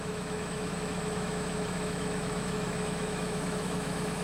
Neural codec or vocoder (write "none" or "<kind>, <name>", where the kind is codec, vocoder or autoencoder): autoencoder, DAC-VAE